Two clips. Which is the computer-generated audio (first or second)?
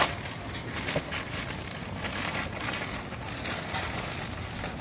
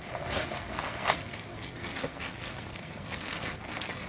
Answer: second